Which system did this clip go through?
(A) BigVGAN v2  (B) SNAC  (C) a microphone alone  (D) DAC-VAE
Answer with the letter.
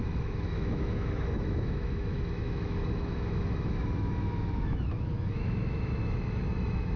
D